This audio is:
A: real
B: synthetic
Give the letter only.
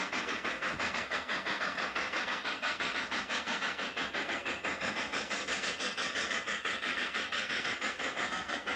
B